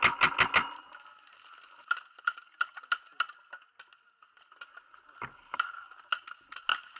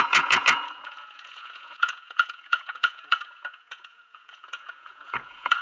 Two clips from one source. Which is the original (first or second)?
first